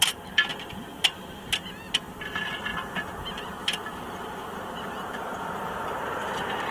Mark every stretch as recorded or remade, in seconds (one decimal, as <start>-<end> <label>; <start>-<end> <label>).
0.0-2.7 recorded; 2.7-6.7 remade